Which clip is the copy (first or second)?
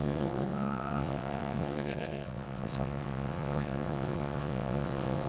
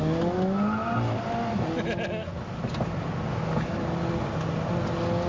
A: first